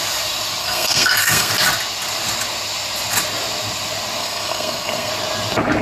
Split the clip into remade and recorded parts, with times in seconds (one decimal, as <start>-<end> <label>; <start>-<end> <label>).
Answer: 0.0-0.6 recorded; 0.6-1.5 remade; 1.5-4.2 recorded; 4.2-5.1 remade; 5.1-5.8 recorded